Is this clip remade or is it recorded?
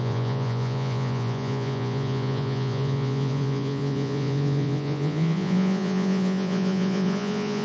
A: remade